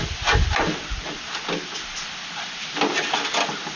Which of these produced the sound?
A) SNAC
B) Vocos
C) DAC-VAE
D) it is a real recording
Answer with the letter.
D